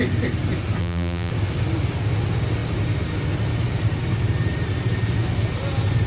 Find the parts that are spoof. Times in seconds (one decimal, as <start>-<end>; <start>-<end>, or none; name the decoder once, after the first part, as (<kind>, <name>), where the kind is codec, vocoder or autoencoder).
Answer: 0.8-1.3 (vocoder, BigVGAN v2)